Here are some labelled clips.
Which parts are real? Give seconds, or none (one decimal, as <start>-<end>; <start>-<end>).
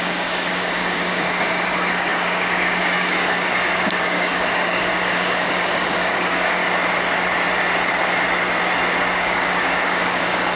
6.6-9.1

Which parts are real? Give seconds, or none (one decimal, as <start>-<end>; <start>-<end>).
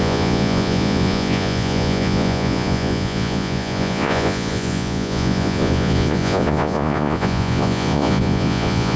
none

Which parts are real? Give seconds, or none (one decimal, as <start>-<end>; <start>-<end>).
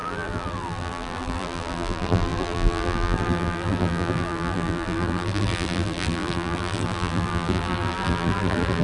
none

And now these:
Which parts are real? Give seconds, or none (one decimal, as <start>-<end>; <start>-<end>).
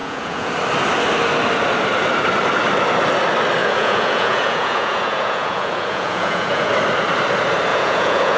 0.5-3.6; 6.7-7.7